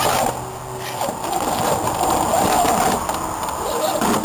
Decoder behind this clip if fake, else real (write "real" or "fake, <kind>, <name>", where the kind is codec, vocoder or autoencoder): real